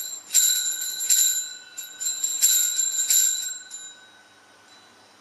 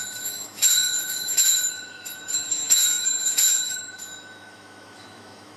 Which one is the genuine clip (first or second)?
first